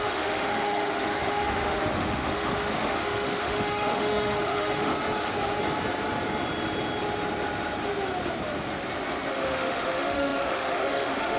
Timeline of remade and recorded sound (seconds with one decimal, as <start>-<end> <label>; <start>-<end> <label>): 0.0-4.9 remade; 4.9-9.3 recorded; 9.3-11.4 remade

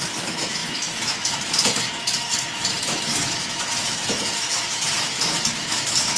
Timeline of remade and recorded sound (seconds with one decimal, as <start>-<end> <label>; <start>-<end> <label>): 0.0-6.2 remade